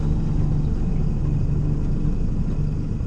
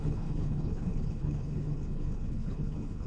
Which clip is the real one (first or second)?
first